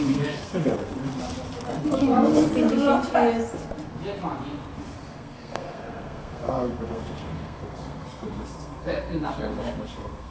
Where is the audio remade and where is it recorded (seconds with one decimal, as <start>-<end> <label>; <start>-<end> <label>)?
0.0-1.0 remade; 1.0-1.7 recorded; 1.7-2.5 remade; 2.5-5.1 recorded; 5.1-10.3 remade